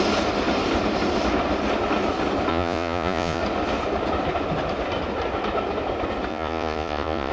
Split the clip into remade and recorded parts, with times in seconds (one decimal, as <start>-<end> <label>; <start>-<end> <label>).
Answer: 0.0-2.5 recorded; 2.5-3.4 remade; 3.4-6.3 recorded; 6.3-7.3 remade